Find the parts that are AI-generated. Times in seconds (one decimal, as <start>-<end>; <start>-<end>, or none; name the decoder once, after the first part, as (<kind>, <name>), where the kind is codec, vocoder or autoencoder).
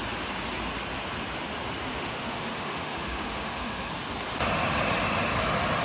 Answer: 1.9-3.9 (autoencoder, DAC-VAE)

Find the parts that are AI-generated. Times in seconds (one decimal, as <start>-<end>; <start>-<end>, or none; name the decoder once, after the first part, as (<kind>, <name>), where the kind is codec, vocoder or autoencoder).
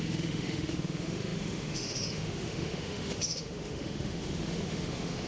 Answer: 0.0-5.3 (autoencoder, DAC-VAE)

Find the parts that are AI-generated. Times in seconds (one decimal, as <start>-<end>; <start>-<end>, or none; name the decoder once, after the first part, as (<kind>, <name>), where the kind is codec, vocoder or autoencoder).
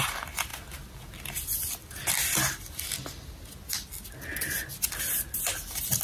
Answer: none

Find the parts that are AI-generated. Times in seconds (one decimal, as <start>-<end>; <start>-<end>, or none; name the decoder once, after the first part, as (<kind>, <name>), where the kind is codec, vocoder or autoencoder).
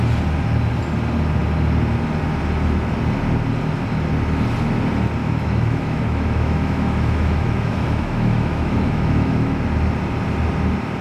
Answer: 5.2-9.6 (autoencoder, DAC-VAE)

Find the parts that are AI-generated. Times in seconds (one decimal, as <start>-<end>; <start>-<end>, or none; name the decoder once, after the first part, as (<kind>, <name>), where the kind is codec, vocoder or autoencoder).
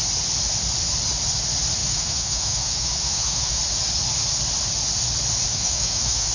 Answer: 1.8-3.6 (autoencoder, DAC-VAE); 5.5-6.3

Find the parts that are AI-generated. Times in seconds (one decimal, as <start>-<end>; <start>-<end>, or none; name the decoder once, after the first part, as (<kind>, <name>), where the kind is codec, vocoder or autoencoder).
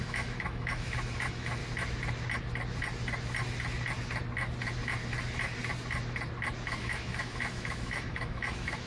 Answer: 0.0-1.6 (autoencoder, DAC-VAE); 6.8-8.9